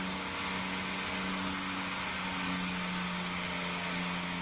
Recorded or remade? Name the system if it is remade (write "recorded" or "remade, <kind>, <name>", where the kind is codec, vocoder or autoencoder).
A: recorded